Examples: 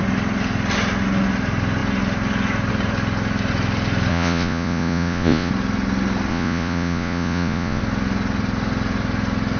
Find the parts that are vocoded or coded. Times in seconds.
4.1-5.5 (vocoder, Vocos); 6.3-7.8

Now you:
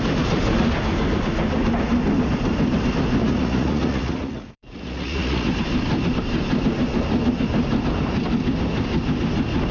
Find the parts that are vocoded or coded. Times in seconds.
3.2-5.5 (vocoder, Vocos)

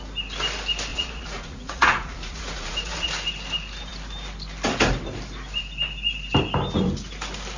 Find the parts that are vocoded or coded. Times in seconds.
0.9-3.1 (vocoder, Vocos)

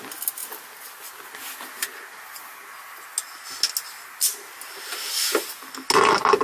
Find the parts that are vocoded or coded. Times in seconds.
none

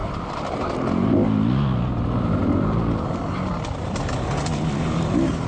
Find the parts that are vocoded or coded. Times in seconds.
none

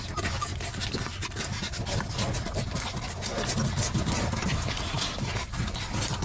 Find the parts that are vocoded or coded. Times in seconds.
none

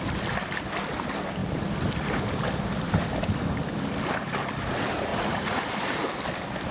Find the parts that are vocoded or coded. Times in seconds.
5.1-5.7 (vocoder, Vocos)

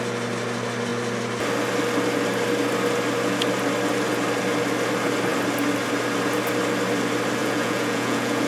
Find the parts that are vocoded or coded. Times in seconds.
7.4-8.5 (vocoder, Vocos)